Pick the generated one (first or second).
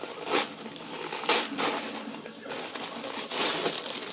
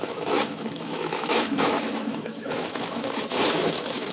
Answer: second